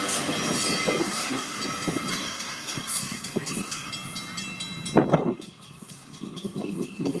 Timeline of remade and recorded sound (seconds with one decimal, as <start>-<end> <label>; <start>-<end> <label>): 0.0-1.0 recorded; 1.0-1.6 remade; 1.6-2.1 recorded; 2.1-3.9 remade; 3.9-5.1 recorded; 5.1-7.2 remade